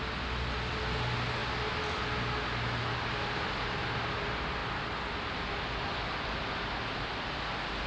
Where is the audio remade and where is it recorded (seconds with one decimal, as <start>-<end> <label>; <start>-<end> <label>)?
0.0-7.9 recorded

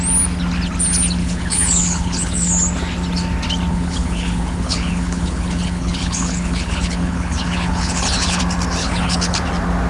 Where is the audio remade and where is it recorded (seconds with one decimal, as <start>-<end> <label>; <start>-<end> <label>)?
0.0-1.2 recorded; 1.2-2.5 remade; 2.5-3.7 recorded; 3.7-8.4 remade; 8.4-8.8 recorded; 8.8-9.4 remade; 9.4-9.9 recorded

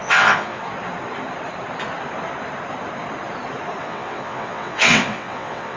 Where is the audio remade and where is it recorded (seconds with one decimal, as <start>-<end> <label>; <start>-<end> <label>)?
0.0-0.6 remade; 0.6-3.8 recorded; 3.8-5.8 remade

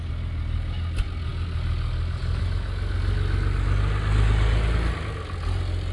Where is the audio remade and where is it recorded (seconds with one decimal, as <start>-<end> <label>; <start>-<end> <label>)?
0.0-5.9 recorded

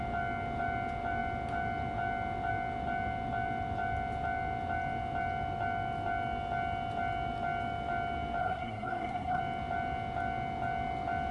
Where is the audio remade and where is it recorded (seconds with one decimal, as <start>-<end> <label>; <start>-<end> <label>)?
0.0-8.4 recorded; 8.4-9.4 remade; 9.4-11.3 recorded

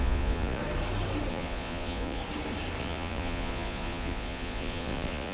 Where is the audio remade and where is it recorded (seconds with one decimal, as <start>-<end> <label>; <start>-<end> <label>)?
0.0-0.6 remade; 0.6-1.3 recorded; 1.3-2.2 remade; 2.2-2.8 recorded; 2.8-5.3 remade